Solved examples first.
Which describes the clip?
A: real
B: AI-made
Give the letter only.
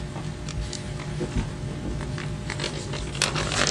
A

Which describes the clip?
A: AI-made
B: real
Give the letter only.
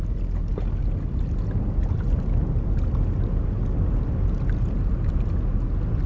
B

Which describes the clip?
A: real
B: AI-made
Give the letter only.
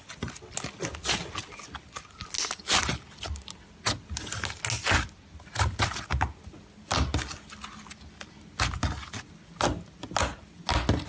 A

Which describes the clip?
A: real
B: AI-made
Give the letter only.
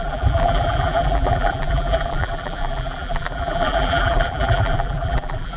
B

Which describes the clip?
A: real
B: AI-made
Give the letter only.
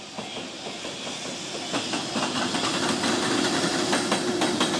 A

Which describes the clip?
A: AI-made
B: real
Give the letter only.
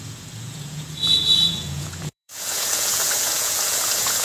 A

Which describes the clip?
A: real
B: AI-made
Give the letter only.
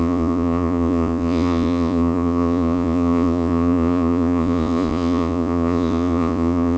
B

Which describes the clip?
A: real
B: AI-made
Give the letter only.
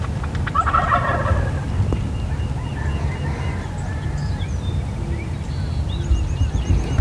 A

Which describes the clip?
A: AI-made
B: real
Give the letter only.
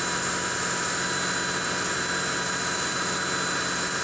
B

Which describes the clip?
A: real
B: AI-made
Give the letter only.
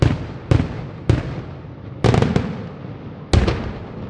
A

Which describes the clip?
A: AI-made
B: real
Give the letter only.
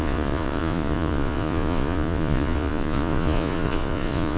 A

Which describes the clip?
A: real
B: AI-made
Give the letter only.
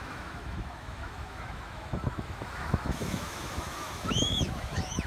B